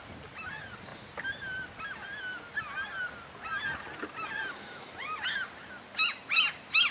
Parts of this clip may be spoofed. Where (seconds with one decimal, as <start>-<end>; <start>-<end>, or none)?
none